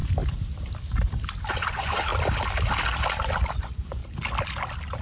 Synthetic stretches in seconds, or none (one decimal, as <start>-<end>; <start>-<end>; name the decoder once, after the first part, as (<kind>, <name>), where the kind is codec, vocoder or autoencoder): 1.5-2.1 (vocoder, Vocos); 3.5-4.0